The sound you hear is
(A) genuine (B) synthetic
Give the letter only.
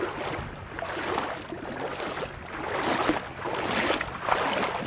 A